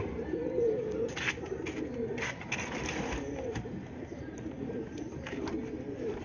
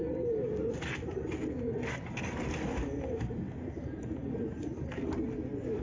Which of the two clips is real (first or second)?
second